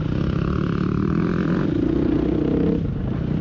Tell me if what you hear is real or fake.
real